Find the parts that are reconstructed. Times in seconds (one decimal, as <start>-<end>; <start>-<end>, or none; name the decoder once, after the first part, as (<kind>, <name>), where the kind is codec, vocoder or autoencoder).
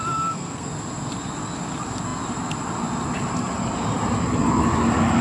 0.0-0.7 (codec, SNAC)